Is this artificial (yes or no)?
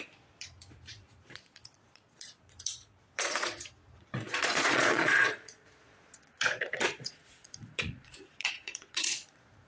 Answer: yes